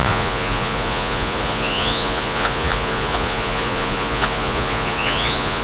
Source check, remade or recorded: remade